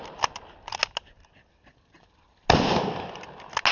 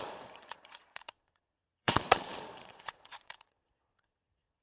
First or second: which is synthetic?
second